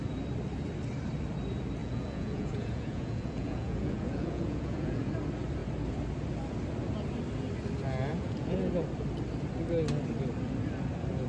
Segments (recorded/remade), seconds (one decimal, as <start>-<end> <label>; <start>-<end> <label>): 0.0-1.8 recorded; 1.8-5.1 remade; 5.1-8.1 recorded; 8.1-8.7 remade; 8.7-11.3 recorded